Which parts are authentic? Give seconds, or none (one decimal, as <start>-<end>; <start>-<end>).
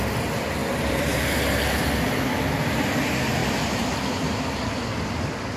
0.0-0.6; 1.9-3.4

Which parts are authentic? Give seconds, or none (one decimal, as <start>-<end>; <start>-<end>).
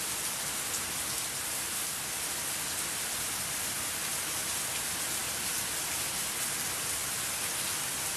0.0-8.2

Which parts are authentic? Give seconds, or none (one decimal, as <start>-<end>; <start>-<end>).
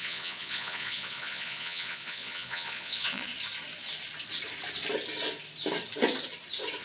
3.3-6.8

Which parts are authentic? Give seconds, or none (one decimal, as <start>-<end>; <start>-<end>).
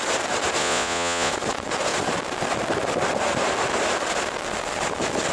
0.0-0.6; 1.3-5.3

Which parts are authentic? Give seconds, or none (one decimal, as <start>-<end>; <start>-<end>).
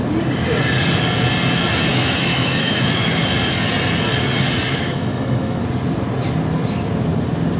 0.0-1.9; 3.2-4.7; 5.6-7.6